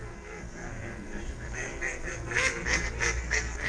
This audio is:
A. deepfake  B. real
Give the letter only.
A